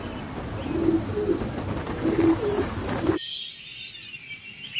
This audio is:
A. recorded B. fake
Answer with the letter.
A